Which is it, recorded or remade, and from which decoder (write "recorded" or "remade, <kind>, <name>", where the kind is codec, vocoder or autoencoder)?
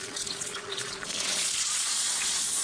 remade, vocoder, Vocos